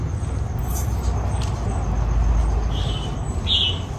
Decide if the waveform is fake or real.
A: real